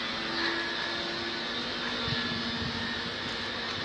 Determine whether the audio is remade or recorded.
recorded